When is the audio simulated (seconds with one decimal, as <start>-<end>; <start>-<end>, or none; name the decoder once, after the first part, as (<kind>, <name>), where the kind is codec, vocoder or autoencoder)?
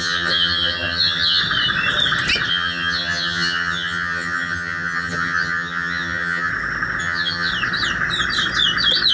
0.0-1.4 (vocoder, HiFi-GAN); 2.5-6.5; 7.0-7.5